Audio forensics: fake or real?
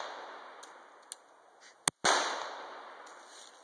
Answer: real